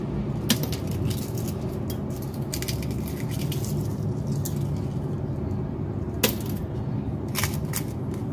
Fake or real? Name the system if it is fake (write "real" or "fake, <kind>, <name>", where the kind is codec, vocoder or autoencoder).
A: real